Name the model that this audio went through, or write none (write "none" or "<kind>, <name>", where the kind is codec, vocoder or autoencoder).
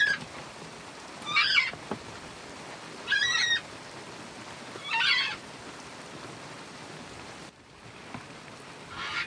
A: none